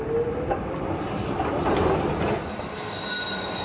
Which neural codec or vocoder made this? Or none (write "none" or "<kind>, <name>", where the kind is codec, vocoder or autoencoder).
none